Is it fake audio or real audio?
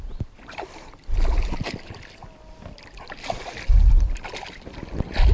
real